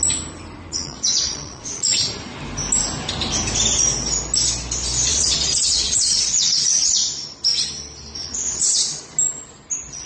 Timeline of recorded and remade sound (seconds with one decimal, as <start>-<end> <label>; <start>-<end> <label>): 0.0-0.7 recorded; 0.7-2.1 remade; 2.1-5.1 recorded; 5.1-6.9 remade; 6.9-8.2 recorded; 8.2-9.0 remade; 9.0-10.1 recorded